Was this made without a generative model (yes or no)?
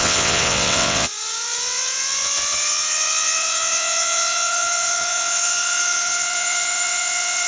no